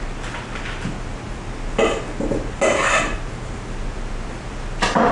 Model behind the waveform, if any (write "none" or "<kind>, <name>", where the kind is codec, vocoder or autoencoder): none